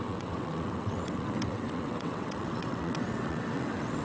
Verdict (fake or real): fake